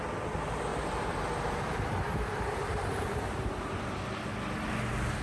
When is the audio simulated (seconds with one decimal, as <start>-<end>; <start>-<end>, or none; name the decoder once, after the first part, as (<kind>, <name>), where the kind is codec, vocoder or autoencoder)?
0.7-3.8 (vocoder, BigVGAN v2)